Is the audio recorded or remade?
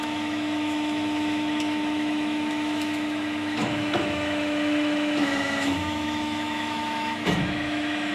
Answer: remade